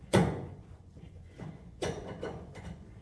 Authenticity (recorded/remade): remade